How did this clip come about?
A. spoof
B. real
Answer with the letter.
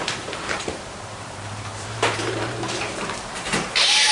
A